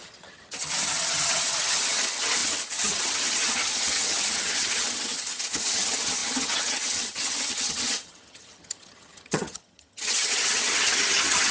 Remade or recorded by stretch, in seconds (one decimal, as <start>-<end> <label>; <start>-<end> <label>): 0.0-11.5 remade